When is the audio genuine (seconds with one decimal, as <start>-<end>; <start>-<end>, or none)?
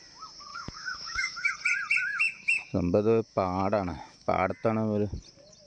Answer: 0.0-0.5; 1.5-2.1; 4.5-5.7